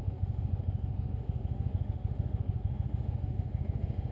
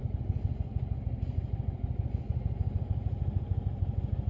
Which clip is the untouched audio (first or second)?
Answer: second